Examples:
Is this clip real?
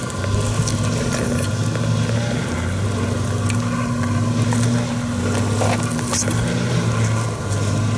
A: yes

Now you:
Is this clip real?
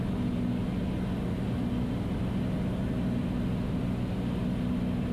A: yes